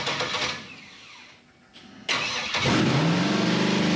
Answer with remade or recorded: recorded